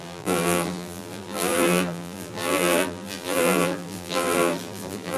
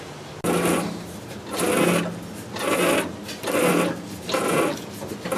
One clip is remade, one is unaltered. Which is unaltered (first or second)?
second